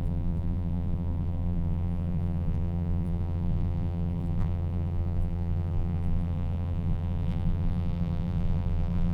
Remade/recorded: remade